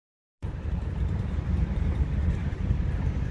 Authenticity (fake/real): fake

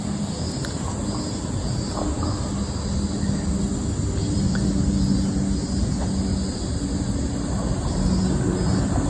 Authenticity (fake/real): real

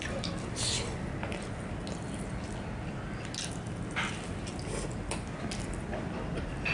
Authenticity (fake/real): real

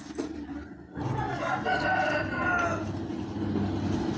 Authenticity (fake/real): real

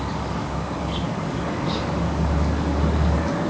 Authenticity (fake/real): fake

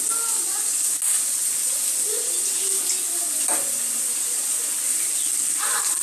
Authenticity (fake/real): real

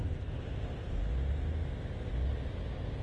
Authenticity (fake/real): real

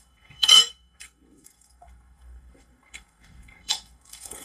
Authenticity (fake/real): fake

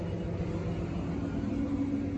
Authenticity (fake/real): real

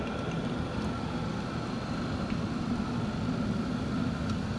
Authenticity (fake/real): real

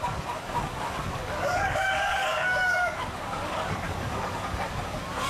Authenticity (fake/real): fake